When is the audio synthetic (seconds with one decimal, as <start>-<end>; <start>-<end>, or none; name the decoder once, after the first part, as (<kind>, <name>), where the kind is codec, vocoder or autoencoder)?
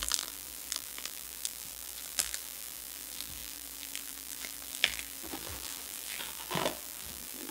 0.0-7.5 (vocoder, BigVGAN v2)